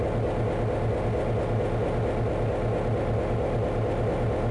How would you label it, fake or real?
real